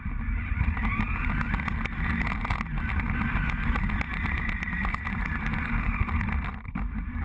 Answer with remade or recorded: recorded